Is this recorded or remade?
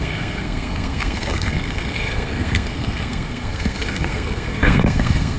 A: remade